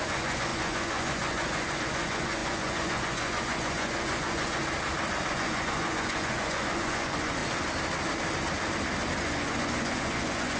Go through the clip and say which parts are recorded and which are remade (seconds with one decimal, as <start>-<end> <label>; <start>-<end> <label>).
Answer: 0.0-4.6 remade; 4.6-5.3 recorded; 5.3-7.4 remade; 7.4-9.2 recorded; 9.2-10.6 remade